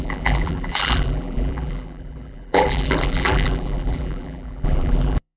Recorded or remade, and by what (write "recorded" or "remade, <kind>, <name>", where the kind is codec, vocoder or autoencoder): remade, vocoder, BigVGAN v2